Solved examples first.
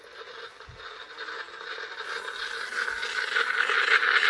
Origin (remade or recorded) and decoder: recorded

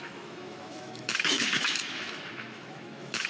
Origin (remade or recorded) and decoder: remade, autoencoder, DAC-VAE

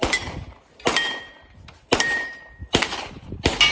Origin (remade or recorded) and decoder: remade, vocoder, BigVGAN v2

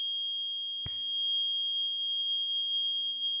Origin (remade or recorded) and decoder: remade, autoencoder, DAC-VAE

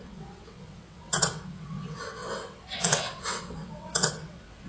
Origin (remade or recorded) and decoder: remade, vocoder, WaveNeXt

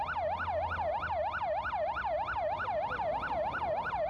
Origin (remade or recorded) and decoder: recorded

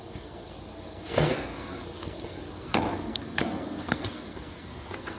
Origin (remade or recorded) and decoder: remade, codec, SNAC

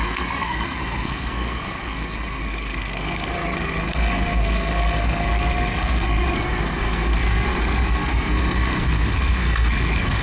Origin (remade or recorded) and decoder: remade, codec, SNAC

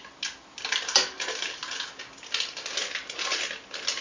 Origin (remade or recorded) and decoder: recorded